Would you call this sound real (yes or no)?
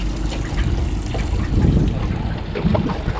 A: yes